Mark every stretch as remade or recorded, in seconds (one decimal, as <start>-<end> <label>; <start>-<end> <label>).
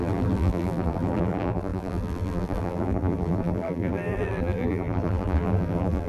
0.0-6.1 remade